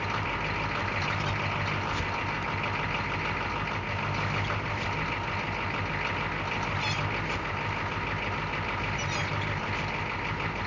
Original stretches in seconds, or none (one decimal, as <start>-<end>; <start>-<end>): 0.0-10.7